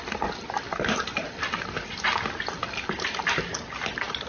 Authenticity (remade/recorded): recorded